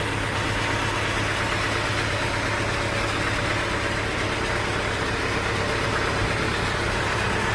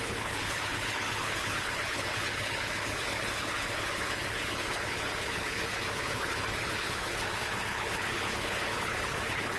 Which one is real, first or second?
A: first